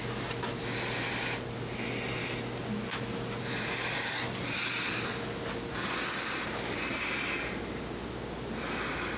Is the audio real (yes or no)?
yes